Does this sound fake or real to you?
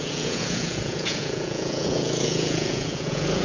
fake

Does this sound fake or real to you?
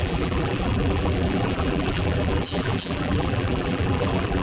fake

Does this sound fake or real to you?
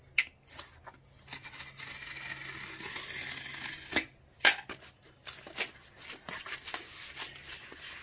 real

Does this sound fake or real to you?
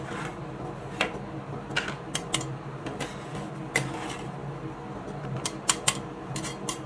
real